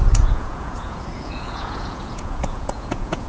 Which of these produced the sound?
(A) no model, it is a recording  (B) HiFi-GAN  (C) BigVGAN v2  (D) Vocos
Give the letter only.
D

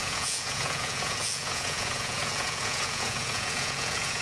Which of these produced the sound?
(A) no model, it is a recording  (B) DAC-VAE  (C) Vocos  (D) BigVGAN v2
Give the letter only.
C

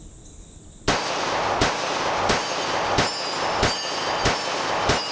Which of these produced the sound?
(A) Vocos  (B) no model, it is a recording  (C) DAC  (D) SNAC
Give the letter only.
B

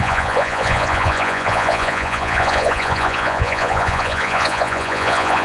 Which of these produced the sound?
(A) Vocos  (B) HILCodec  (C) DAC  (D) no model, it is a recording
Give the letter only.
A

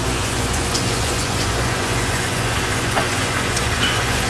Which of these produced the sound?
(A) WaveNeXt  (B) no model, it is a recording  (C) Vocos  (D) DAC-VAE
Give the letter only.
C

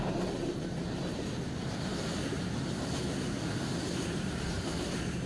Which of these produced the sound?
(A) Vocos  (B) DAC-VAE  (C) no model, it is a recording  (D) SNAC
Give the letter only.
C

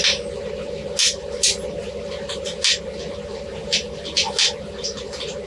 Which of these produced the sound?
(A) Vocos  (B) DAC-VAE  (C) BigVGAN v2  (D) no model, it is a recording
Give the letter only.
D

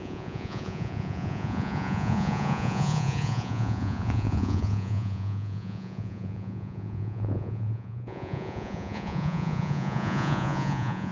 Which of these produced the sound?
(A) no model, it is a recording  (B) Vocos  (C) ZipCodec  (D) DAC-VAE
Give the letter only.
B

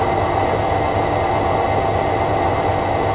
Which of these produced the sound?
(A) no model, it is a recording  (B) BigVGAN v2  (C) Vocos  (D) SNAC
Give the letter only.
A